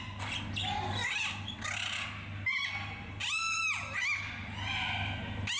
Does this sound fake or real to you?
real